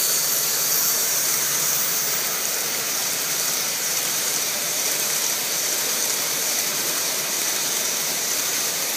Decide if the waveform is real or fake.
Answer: fake